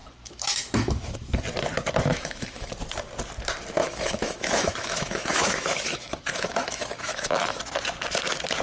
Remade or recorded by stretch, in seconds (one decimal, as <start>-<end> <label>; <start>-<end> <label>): 0.0-1.4 remade; 1.4-2.1 recorded; 2.1-2.7 remade; 2.7-3.8 recorded; 3.8-7.6 remade; 7.6-8.6 recorded